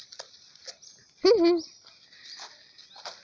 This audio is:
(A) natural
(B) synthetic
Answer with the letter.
A